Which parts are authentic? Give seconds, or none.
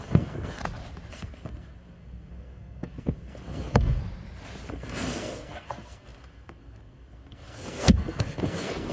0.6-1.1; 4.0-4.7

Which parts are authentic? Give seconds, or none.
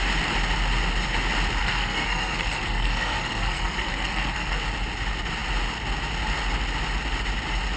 0.0-1.6; 4.6-7.8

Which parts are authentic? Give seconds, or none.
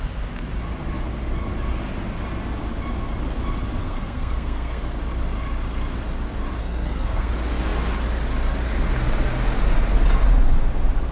0.0-3.8; 5.0-6.6; 7.3-11.1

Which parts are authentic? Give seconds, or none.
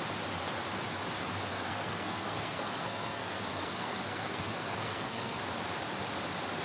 0.0-1.5; 5.4-6.6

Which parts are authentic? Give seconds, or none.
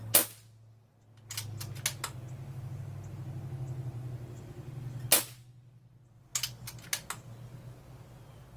0.0-8.6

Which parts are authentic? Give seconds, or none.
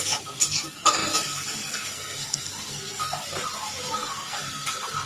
3.2-3.9